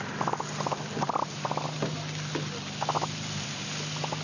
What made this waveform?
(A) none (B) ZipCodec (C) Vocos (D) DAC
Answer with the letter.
A